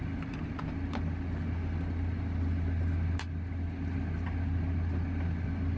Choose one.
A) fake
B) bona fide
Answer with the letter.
B